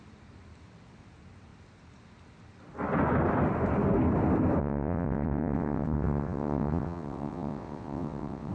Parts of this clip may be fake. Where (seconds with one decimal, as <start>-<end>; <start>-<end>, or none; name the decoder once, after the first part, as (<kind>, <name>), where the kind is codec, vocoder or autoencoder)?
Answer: 4.6-8.5 (vocoder, WaveNeXt)